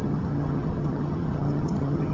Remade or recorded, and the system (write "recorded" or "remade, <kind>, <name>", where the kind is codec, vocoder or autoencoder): remade, vocoder, HiFi-GAN